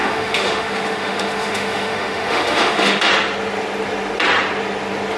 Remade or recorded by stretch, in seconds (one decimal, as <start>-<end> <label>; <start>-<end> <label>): 0.0-3.1 remade; 3.1-5.2 recorded